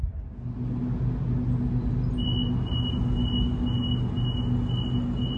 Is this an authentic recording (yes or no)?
yes